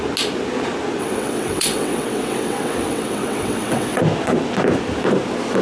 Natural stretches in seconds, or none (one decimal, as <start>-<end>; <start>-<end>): 0.0-1.0; 4.0-5.6